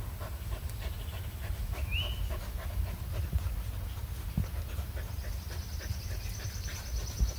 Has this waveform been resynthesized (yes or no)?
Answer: no